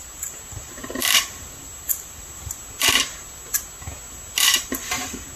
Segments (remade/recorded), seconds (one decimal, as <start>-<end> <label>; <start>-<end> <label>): 0.0-0.8 recorded; 0.8-2.6 remade; 2.6-5.4 recorded